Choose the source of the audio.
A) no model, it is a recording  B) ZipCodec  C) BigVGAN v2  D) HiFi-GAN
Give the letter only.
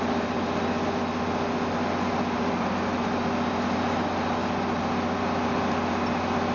A